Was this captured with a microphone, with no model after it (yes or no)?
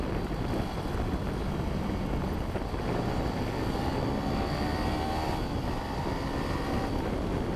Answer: yes